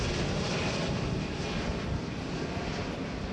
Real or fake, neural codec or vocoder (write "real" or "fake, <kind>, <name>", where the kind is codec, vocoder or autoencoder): real